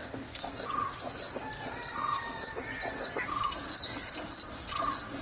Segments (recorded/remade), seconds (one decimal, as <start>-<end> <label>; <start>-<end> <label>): 0.0-0.5 remade; 0.5-5.2 recorded